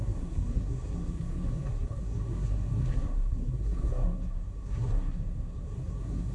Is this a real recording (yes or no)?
no